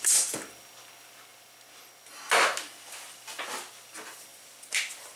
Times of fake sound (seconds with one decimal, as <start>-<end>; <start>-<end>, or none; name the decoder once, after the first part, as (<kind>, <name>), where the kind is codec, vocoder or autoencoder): 4.3-5.2 (vocoder, BigVGAN v2)

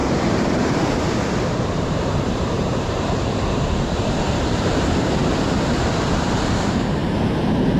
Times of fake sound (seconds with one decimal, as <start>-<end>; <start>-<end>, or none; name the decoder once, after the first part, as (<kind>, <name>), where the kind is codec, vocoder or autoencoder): 0.0-5.2 (vocoder, BigVGAN v2); 6.1-7.8

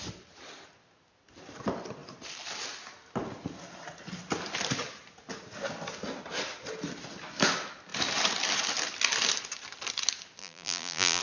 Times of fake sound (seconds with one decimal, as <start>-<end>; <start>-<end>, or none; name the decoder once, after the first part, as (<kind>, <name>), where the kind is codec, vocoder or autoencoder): 10.4-11.2 (vocoder, BigVGAN v2)

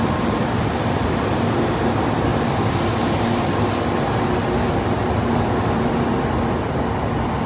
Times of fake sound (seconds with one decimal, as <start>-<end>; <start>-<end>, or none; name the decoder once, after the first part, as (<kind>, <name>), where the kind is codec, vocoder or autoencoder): none

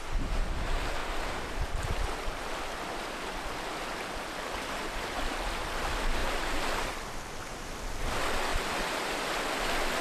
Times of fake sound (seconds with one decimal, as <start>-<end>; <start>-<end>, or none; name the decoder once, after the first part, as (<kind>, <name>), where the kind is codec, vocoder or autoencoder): 1.0-5.8 (vocoder, BigVGAN v2); 8.5-9.6

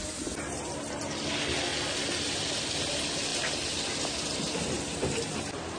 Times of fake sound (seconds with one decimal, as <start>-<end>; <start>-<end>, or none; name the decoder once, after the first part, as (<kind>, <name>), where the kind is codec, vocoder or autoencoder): 3.3-4.8 (vocoder, BigVGAN v2)

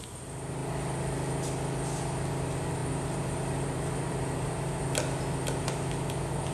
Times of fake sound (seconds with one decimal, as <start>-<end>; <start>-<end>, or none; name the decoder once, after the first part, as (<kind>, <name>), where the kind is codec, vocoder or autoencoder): 2.8-4.8 (vocoder, BigVGAN v2)